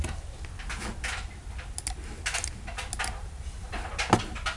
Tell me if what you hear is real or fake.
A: real